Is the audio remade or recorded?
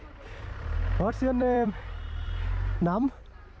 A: remade